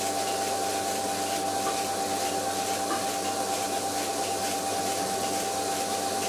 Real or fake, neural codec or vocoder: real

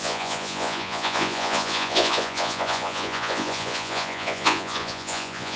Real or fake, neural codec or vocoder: fake, vocoder, Vocos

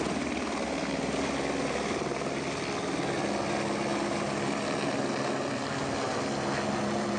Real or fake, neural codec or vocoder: real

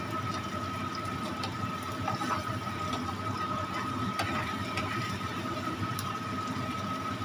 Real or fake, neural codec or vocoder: real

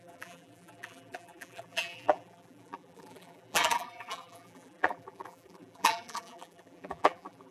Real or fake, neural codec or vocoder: fake, vocoder, BigVGAN v2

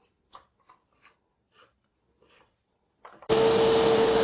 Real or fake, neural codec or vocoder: real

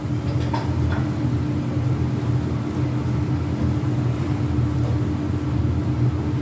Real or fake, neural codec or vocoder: real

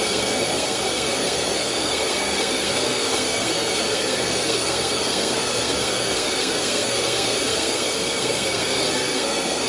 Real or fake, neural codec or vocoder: fake, codec, SNAC